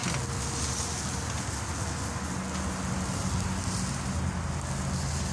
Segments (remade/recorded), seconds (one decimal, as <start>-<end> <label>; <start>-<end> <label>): 0.0-5.3 recorded